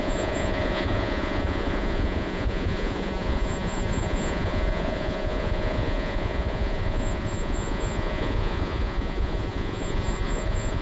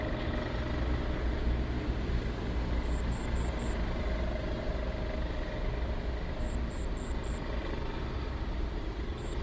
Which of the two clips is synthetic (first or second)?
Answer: first